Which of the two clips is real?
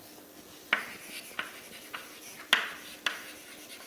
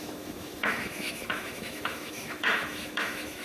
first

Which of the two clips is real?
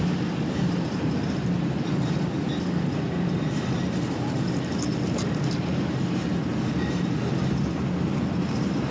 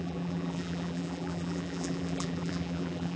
first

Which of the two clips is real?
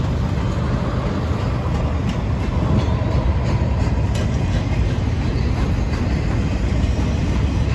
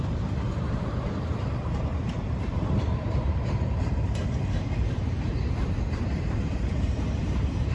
first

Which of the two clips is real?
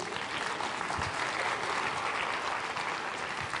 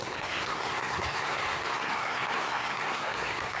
first